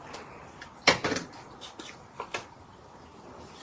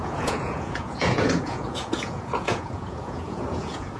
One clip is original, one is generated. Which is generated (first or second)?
second